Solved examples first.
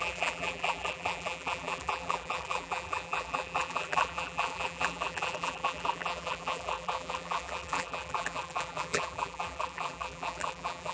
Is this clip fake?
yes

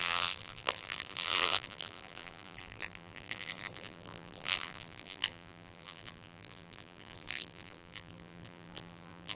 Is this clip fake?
yes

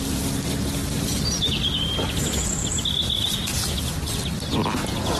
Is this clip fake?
no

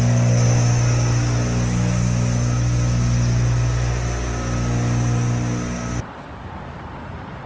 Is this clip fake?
no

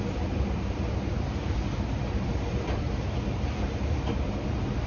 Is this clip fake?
yes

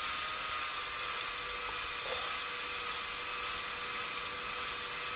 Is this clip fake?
no